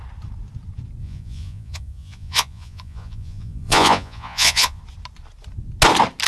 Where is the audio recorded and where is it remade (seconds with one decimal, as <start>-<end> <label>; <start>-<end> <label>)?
0.0-1.0 recorded; 1.0-4.8 remade; 4.8-6.3 recorded